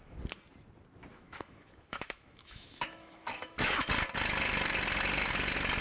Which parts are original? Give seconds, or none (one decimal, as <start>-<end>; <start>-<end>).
0.0-1.1; 3.9-5.8